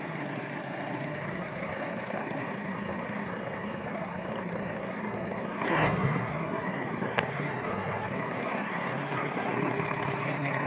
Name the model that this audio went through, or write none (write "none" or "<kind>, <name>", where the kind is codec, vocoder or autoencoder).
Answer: codec, SNAC